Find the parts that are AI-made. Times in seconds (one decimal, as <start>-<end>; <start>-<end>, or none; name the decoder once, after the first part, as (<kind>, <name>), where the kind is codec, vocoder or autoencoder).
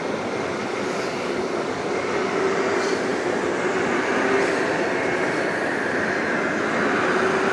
0.6-2.3 (codec, DAC)